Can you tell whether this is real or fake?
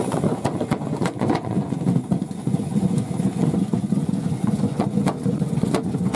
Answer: fake